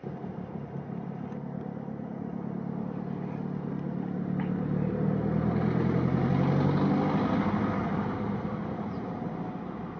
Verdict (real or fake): real